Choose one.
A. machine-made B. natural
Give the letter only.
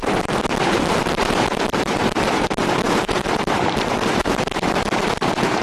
A